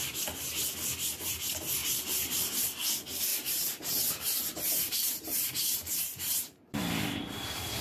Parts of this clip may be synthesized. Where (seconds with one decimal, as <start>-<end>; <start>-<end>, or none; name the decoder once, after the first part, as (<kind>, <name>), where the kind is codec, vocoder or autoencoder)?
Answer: 1.8-2.9 (vocoder, BigVGAN v2); 3.3-6.8